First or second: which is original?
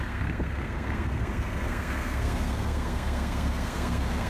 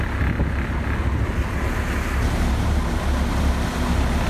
second